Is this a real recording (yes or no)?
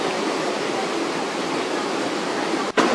yes